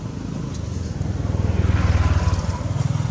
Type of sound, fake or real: real